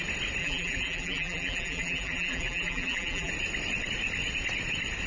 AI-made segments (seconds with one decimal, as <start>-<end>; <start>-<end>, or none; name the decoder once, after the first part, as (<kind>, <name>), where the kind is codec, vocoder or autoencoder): 0.4-3.3 (vocoder, BigVGAN v2)